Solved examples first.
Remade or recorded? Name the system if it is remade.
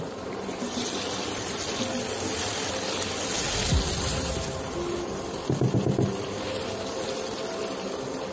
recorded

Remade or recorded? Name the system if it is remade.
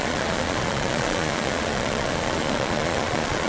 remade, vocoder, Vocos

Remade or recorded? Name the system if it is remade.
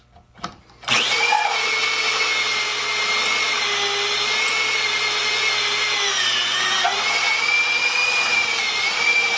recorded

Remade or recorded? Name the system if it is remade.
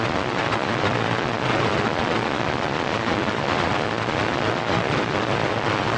remade, vocoder, Vocos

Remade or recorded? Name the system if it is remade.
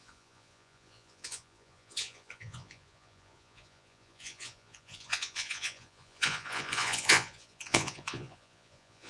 remade, vocoder, Vocos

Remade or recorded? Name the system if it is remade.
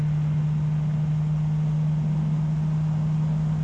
recorded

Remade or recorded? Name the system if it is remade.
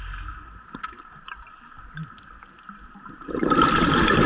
recorded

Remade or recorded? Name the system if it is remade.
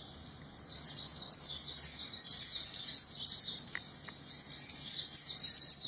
recorded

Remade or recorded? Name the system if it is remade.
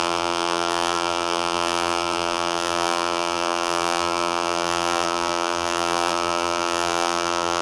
remade, vocoder, BigVGAN v2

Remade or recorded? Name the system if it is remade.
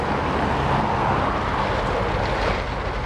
recorded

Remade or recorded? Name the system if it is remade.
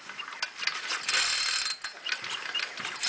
recorded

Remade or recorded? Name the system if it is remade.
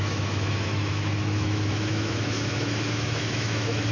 remade, autoencoder, DAC-VAE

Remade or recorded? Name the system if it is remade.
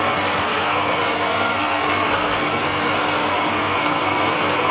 remade, codec, SNAC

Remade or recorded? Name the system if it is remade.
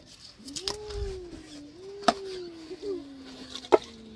recorded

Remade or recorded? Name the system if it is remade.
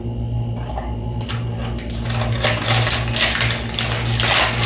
recorded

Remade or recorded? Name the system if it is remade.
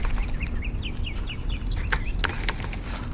recorded